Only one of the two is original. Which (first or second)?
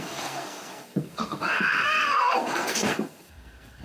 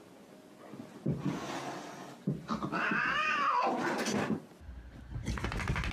second